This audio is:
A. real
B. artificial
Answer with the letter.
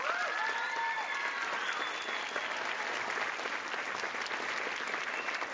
A